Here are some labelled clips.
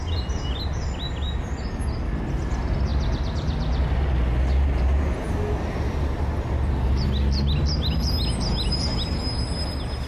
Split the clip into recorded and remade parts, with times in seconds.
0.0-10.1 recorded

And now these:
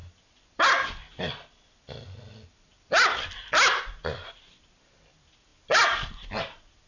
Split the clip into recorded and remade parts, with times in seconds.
0.0-6.9 recorded

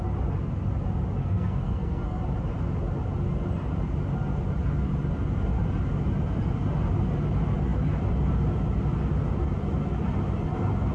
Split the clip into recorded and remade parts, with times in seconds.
0.0-1.2 recorded; 1.2-2.2 remade; 2.2-10.9 recorded

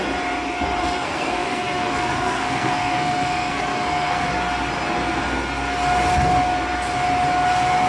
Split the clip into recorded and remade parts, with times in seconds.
0.0-0.8 recorded; 0.8-4.3 remade; 4.3-7.9 recorded

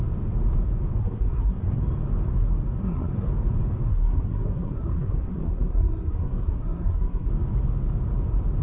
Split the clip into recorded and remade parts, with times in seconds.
0.0-1.0 recorded; 1.0-1.8 remade; 1.8-2.8 recorded; 2.8-3.3 remade; 3.3-3.9 recorded; 3.9-7.3 remade; 7.3-8.6 recorded